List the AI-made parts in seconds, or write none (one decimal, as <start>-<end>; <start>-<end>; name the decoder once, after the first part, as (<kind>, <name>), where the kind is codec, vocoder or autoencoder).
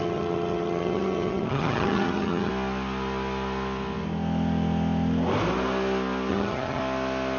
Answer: 0.0-2.5 (vocoder, HiFi-GAN); 6.3-6.8